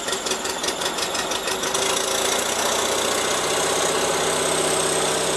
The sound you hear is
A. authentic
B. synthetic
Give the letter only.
A